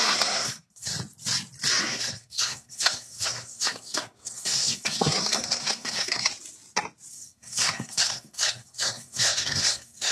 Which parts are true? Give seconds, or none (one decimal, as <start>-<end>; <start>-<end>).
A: 0.9-1.8; 6.3-7.1